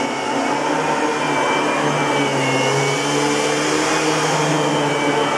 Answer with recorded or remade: recorded